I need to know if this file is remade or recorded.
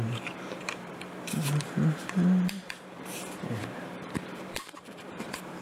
remade